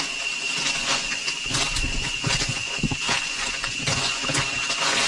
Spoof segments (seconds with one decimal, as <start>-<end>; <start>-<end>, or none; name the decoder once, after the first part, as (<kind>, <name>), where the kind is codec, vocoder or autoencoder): 0.0-5.1 (vocoder, Vocos)